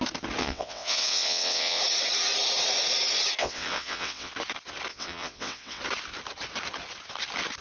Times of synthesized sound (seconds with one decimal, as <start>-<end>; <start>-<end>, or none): 0.4-1.8; 3.4-4.3; 4.9-5.8